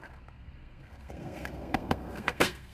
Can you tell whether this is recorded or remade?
remade